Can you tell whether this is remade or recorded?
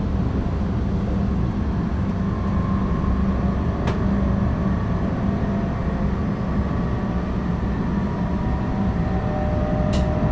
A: recorded